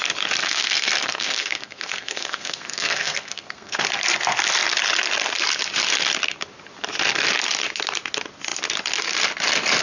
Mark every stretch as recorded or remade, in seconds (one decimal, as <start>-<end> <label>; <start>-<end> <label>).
0.0-0.4 recorded; 0.4-3.8 remade; 3.8-9.8 recorded